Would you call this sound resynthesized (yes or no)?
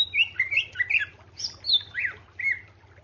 no